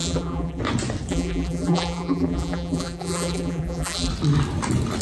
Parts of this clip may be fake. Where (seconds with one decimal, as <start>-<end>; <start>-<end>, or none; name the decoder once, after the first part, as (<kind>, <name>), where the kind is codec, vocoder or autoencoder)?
0.0-0.6 (vocoder, BigVGAN v2); 1.1-4.1